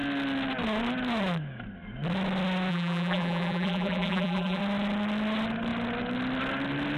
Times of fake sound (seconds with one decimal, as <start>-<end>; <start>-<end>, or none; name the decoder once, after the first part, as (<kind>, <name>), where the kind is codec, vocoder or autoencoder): 2.7-4.6 (vocoder, BigVGAN v2)